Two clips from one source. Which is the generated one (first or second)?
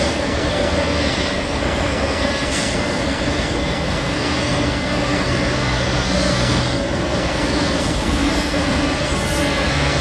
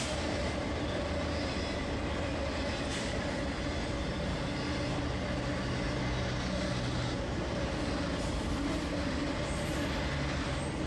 first